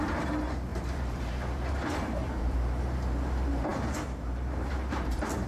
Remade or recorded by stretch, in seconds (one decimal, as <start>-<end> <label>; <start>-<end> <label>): 0.0-5.5 remade